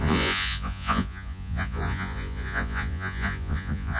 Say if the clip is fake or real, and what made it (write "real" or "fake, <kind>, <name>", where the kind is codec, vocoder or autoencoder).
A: fake, vocoder, Vocos